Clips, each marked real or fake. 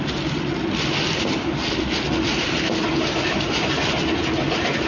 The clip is real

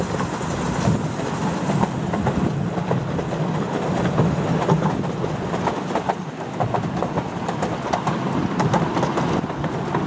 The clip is real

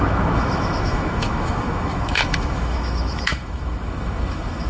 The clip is fake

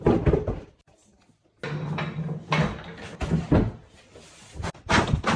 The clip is real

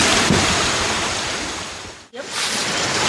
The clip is real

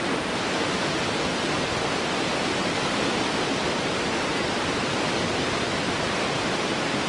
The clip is real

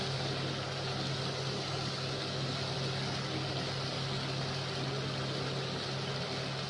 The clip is real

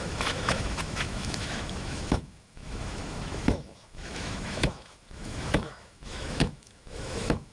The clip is fake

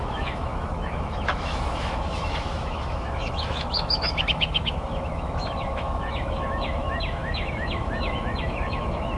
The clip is fake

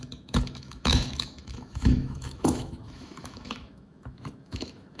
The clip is fake